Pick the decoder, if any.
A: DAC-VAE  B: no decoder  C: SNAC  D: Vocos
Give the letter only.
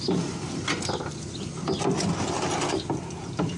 B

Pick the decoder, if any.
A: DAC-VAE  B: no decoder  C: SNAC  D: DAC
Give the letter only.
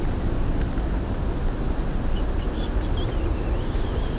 B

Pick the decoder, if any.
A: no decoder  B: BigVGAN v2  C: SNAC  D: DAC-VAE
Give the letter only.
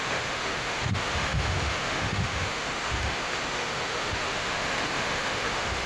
D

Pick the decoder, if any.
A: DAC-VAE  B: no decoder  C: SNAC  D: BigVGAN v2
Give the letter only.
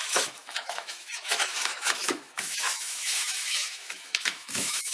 A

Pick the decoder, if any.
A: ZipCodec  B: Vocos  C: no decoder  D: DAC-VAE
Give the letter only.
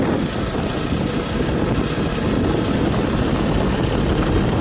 C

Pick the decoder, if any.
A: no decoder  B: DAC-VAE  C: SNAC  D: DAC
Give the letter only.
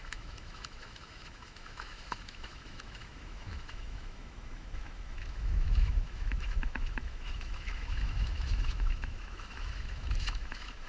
B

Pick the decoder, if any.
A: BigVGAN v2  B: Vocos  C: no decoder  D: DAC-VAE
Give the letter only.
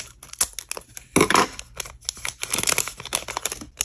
C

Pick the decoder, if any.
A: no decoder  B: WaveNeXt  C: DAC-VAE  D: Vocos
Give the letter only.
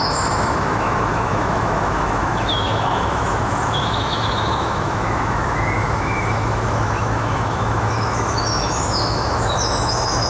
C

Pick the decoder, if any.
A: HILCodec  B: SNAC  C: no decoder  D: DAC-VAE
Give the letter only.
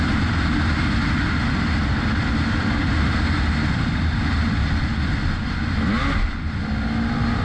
C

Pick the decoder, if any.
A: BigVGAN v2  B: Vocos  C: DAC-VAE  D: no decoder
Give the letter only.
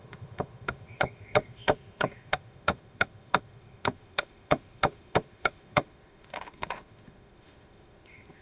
C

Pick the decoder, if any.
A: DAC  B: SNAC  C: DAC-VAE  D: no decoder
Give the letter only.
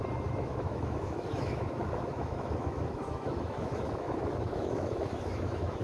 C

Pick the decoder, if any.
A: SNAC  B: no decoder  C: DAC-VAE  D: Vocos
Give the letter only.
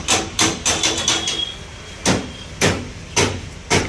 B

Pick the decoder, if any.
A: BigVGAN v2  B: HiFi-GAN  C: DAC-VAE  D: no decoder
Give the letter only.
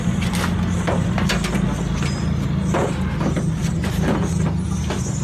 D